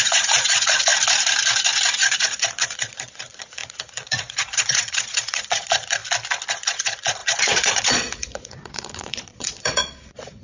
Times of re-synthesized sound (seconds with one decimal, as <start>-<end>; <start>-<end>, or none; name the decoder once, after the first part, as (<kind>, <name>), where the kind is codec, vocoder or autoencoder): 0.0-0.9 (vocoder, Vocos); 1.9-6.0; 6.5-10.4